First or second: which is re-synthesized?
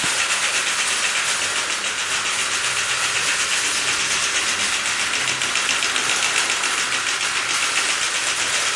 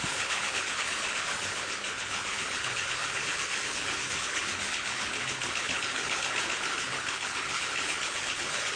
second